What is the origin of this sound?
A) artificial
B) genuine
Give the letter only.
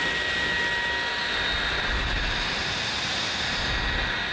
B